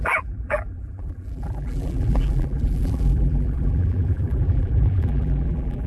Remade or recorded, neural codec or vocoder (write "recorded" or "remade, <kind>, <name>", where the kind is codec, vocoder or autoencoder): remade, vocoder, BigVGAN v2